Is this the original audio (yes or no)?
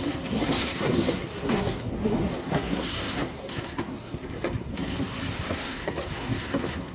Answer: no